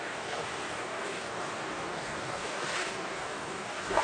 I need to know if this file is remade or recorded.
remade